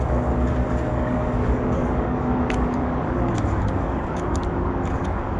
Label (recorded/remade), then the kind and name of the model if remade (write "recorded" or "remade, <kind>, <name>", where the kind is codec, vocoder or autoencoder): remade, codec, DAC